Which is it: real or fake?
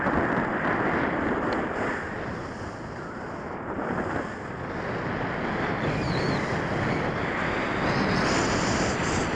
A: real